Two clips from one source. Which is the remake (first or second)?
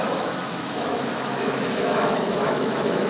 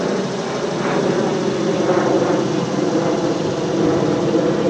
first